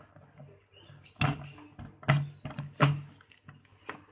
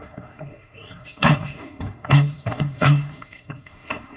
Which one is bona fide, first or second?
first